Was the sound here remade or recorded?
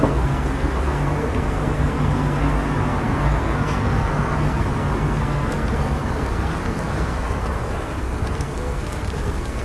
remade